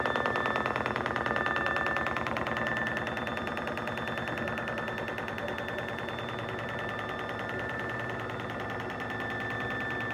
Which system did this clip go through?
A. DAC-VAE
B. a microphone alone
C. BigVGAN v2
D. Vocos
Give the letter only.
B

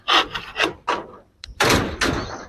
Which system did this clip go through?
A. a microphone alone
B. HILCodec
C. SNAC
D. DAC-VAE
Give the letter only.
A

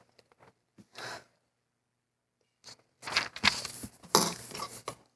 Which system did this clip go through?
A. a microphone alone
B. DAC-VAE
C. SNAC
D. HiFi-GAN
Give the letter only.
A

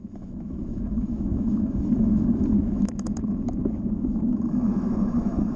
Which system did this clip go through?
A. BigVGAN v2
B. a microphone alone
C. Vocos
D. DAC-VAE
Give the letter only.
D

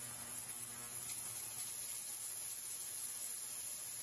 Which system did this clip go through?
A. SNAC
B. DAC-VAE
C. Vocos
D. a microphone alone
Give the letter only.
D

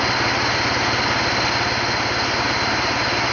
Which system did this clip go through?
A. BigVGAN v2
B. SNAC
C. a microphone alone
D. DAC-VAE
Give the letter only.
C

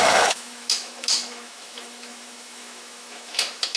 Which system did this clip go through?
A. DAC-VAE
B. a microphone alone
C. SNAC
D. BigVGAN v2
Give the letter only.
A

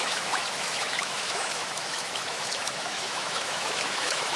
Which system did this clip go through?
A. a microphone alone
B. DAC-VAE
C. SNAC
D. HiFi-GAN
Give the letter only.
B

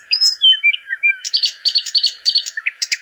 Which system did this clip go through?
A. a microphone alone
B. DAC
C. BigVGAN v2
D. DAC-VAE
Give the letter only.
D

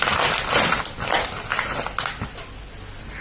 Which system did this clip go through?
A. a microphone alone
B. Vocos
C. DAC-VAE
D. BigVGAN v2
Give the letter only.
A